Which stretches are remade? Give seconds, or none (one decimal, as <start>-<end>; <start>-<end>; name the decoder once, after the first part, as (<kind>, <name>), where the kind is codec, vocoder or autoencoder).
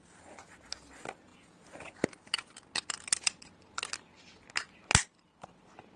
none